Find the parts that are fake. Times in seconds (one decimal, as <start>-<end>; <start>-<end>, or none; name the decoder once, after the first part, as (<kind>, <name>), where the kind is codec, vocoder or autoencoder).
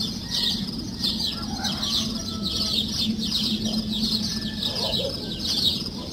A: none